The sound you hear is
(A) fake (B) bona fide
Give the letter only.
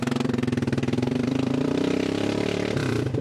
A